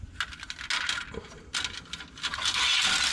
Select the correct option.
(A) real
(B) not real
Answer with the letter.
A